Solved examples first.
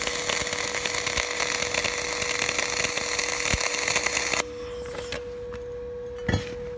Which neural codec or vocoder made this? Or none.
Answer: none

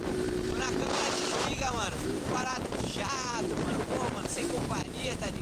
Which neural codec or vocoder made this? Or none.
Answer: vocoder, BigVGAN v2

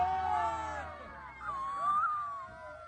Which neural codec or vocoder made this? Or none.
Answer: none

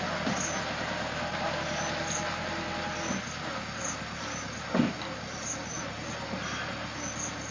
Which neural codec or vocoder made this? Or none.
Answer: none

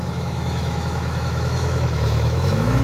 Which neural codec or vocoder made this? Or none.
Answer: autoencoder, DAC-VAE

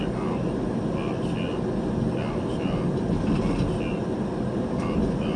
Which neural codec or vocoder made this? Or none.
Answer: none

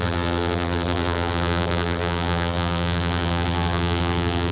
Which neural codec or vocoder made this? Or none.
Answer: vocoder, BigVGAN v2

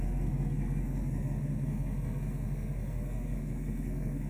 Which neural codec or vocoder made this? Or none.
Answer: codec, SNAC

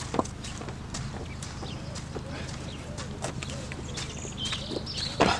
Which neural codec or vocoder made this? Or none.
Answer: none